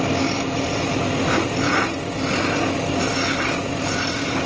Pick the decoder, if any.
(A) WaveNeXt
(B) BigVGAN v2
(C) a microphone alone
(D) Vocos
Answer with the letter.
C